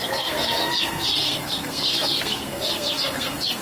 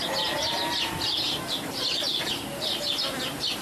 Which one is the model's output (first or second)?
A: first